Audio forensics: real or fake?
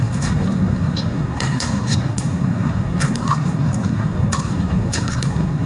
fake